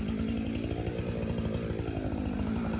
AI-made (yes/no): no